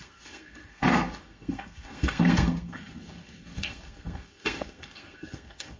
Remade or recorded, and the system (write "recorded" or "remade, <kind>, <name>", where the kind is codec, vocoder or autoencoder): remade, codec, SNAC